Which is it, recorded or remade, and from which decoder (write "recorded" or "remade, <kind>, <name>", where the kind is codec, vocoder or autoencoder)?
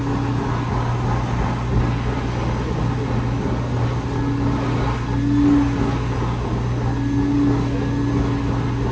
recorded